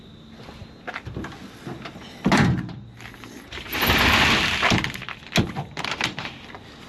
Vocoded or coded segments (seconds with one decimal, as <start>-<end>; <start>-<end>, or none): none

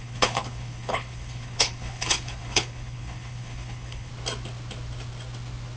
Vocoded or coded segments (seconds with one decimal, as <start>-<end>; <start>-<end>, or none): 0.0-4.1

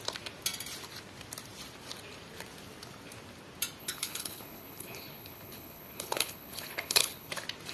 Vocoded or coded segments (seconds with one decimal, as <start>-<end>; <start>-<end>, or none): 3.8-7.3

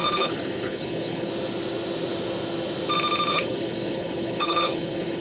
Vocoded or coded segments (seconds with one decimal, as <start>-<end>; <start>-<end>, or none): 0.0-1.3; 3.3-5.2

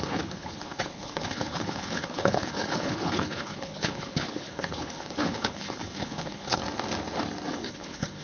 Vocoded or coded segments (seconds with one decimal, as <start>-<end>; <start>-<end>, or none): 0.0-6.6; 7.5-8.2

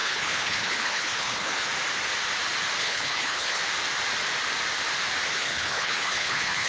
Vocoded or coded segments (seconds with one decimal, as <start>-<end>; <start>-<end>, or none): 0.0-1.7; 2.8-3.6; 5.3-6.7

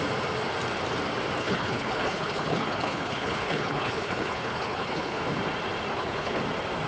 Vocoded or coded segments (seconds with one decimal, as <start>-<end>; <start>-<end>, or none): 1.4-5.2; 5.9-6.4